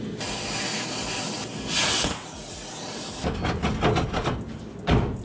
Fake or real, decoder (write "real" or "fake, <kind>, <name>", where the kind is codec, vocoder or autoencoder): real